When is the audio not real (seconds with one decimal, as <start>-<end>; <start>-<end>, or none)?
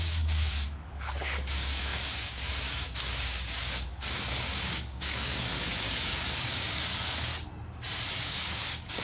0.0-7.3; 8.2-9.0